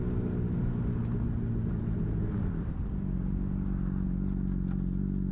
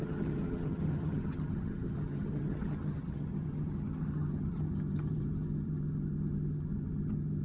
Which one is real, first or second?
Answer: first